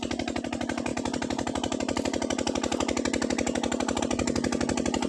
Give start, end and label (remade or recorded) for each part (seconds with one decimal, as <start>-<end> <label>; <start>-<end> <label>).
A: 0.0-0.9 recorded; 0.9-4.0 remade; 4.0-5.1 recorded